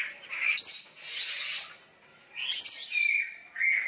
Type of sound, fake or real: real